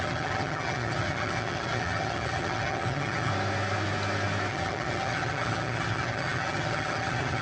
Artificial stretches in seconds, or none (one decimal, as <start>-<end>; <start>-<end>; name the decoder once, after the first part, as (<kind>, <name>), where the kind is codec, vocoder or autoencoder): 0.0-3.3 (vocoder, HiFi-GAN); 4.5-7.4